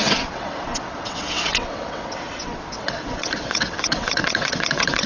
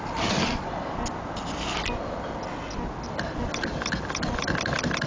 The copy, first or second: first